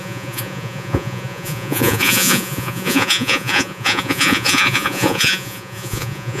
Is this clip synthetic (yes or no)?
yes